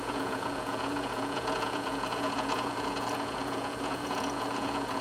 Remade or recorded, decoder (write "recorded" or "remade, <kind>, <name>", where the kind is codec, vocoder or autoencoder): remade, vocoder, Vocos